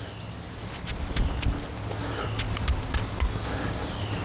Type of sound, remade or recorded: recorded